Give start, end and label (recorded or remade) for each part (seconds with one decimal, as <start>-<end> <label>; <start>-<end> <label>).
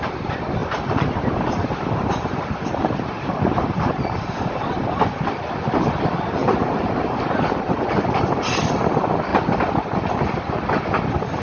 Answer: 0.0-0.6 recorded; 0.6-5.0 remade; 5.0-6.4 recorded; 6.4-8.2 remade; 8.2-11.4 recorded